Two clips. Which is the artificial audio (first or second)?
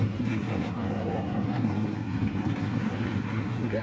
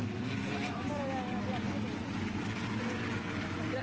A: first